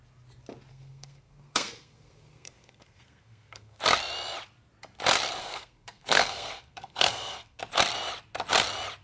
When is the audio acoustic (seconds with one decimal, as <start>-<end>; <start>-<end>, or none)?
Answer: 0.0-0.7; 3.8-5.4; 7.6-9.0

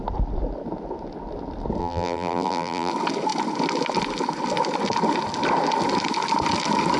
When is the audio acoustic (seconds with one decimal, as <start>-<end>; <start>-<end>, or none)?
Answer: 0.0-1.8; 2.9-7.0

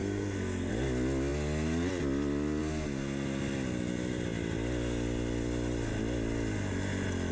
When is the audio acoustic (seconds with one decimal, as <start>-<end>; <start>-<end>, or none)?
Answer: 0.7-7.3

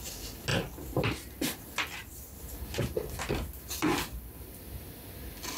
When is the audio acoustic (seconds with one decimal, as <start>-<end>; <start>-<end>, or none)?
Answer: 0.0-0.5; 1.6-2.0; 4.8-5.6

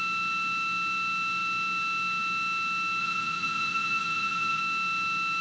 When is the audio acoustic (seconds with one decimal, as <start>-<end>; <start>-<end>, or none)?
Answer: 0.0-3.0; 4.6-5.4

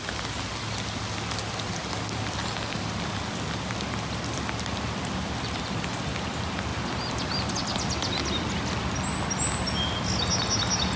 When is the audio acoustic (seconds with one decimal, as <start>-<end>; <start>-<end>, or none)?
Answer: 0.0-11.0